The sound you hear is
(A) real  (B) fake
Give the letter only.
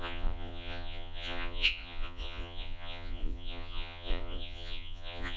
B